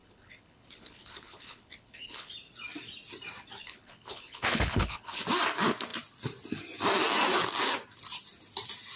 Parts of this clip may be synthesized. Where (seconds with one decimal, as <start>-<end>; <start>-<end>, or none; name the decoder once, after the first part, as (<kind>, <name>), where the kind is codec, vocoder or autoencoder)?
0.0-2.3 (codec, HILCodec); 3.6-5.2